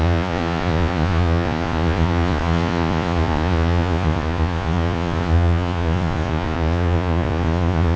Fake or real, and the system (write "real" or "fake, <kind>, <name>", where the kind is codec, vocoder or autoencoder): fake, vocoder, Vocos